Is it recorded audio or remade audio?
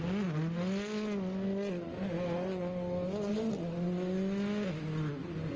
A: recorded